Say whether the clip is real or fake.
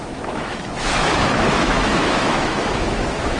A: fake